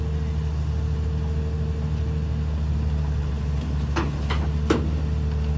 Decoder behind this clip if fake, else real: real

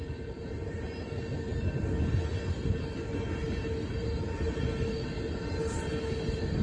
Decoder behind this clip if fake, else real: real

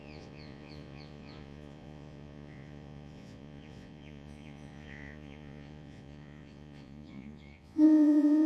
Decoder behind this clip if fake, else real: fake, vocoder, Vocos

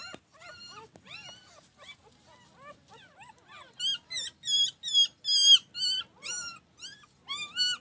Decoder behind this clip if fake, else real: real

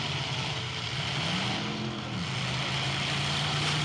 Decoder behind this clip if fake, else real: real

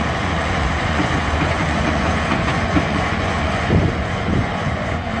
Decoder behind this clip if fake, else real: fake, vocoder, Vocos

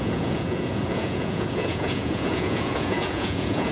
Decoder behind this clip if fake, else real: fake, vocoder, Vocos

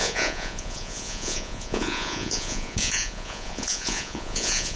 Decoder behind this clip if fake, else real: fake, vocoder, Vocos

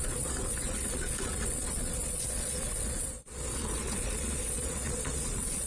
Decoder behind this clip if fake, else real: fake, vocoder, Vocos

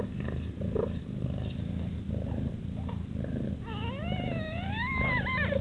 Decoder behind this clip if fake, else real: real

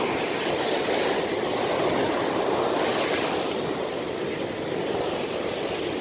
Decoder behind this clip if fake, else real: real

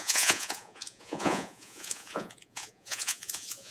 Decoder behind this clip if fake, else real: fake, vocoder, Vocos